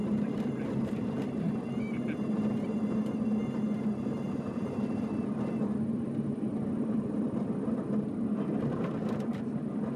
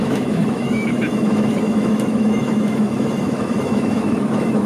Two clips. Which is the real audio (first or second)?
first